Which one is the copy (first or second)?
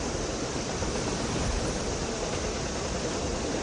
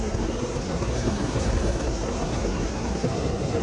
second